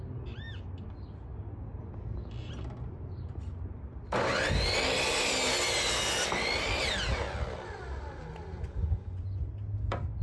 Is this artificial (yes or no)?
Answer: no